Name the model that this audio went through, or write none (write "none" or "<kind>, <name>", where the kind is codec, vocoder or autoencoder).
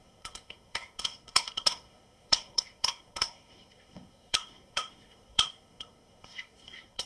codec, SNAC